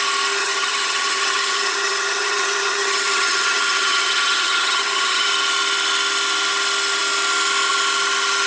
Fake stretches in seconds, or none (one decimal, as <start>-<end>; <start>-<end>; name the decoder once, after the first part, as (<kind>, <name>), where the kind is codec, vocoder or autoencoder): 0.4-5.3 (vocoder, HiFi-GAN)